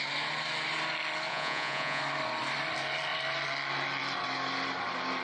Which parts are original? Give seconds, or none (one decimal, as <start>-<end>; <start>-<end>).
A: 0.0-1.3; 2.0-5.2